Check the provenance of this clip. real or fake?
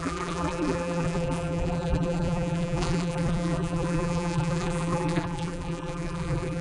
fake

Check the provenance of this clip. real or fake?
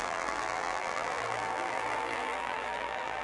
fake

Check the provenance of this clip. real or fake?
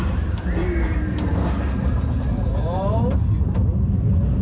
fake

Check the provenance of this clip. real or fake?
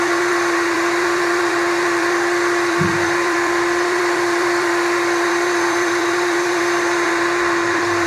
fake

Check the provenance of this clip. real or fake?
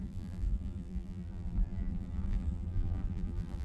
fake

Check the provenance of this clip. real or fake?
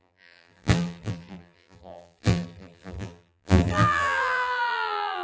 fake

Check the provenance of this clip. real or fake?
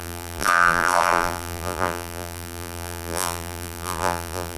fake